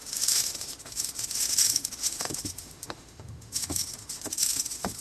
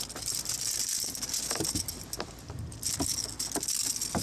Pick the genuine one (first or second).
second